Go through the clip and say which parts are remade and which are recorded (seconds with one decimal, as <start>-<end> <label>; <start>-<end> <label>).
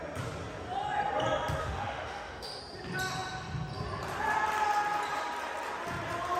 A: 0.0-1.6 recorded; 1.6-2.6 remade; 2.6-6.4 recorded